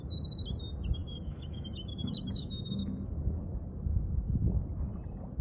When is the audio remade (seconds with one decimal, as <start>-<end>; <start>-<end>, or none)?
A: 1.0-3.5